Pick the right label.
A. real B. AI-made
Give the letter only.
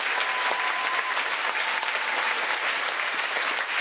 A